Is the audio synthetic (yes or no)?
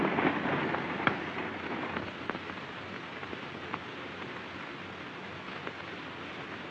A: no